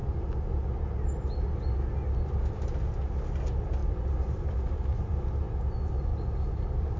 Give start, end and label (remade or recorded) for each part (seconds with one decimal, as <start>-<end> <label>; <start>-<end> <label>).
0.0-3.8 recorded; 3.8-5.0 remade; 5.0-6.1 recorded; 6.1-7.0 remade